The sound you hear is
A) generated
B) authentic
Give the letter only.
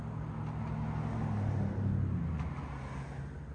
B